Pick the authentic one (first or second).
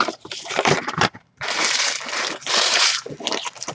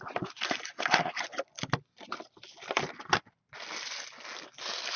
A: second